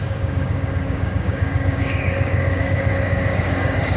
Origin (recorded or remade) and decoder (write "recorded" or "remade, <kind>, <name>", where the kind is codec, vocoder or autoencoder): remade, codec, DAC